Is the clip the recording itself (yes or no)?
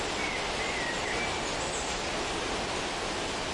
yes